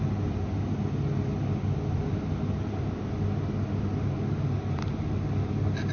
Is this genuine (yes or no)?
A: yes